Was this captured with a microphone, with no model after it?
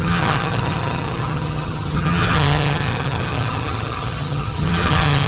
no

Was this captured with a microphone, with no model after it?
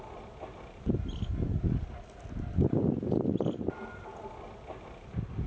yes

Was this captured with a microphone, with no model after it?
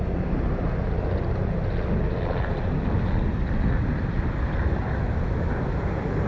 yes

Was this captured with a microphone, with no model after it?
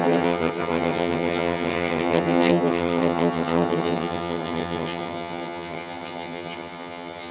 no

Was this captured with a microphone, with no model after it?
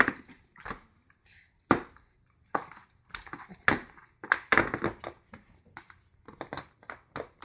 yes